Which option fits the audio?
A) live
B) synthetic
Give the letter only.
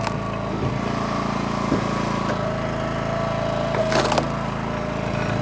A